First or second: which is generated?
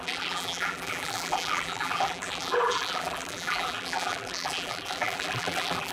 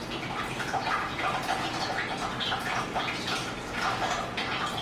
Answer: first